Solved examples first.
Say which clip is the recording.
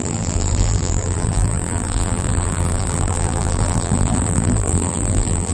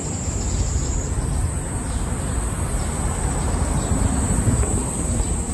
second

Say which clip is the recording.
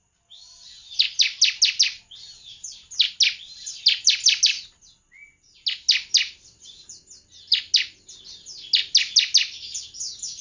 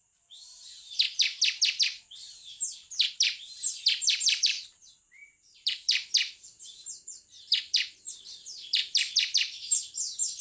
first